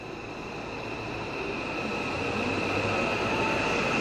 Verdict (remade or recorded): recorded